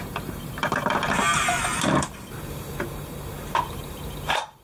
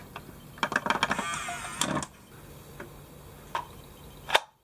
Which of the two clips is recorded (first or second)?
second